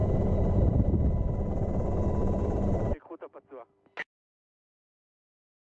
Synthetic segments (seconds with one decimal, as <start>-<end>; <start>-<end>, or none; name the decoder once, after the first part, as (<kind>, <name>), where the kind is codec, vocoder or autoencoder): 0.0-0.9 (vocoder, BigVGAN v2); 2.2-3.5